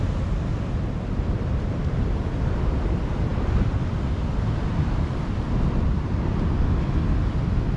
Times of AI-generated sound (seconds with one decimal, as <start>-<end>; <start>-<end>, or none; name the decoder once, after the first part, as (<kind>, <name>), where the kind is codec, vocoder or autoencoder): none